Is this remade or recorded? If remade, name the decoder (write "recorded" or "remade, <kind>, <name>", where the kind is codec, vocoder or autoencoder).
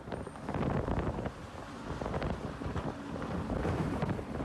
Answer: recorded